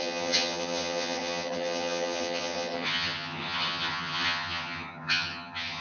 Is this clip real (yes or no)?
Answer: no